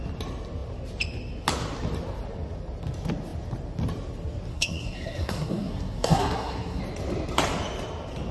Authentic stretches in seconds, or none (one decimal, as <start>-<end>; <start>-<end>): 0.0-4.5; 6.8-8.3